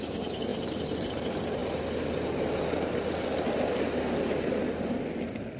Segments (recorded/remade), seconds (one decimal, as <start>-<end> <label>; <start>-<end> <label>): 0.0-0.5 recorded; 0.5-1.1 remade; 1.1-5.6 recorded